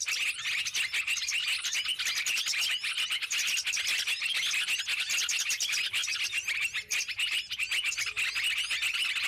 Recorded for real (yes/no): yes